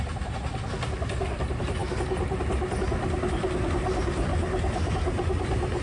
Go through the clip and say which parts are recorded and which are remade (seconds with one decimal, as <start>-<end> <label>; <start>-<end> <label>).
0.0-5.8 recorded